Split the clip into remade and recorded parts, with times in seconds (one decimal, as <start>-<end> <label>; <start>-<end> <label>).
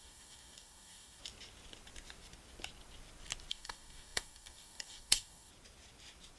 0.0-1.2 remade; 1.2-3.5 recorded; 3.5-5.5 remade; 5.5-6.4 recorded